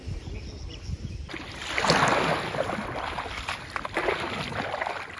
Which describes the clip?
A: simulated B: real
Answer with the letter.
B